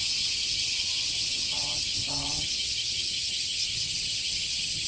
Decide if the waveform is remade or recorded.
remade